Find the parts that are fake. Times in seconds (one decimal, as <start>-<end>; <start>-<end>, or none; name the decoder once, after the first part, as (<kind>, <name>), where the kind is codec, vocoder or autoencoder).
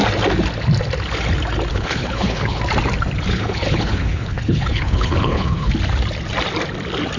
1.7-2.6 (codec, HILCodec); 3.3-5.7